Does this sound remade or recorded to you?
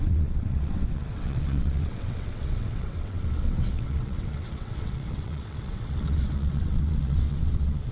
remade